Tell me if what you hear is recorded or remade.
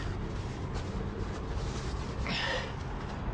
recorded